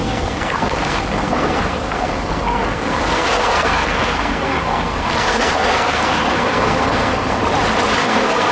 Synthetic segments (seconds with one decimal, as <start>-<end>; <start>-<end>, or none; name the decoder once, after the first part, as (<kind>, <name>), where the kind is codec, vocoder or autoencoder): 0.0-7.4 (codec, SNAC); 8.0-8.5